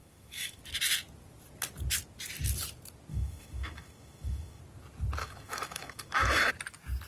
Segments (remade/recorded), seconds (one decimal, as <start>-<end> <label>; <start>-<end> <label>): 0.0-0.6 remade; 0.6-3.1 recorded; 3.1-4.6 remade; 4.6-5.2 recorded; 5.2-6.5 remade; 6.5-7.1 recorded